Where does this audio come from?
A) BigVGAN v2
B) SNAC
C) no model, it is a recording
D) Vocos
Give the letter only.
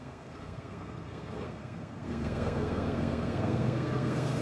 B